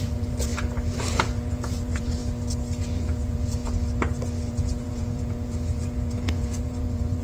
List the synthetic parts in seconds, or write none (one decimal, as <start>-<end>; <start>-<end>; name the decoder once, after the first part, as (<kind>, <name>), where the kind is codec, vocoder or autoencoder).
0.0-0.5 (vocoder, Vocos); 1.0-2.2; 2.8-3.6; 4.5-7.2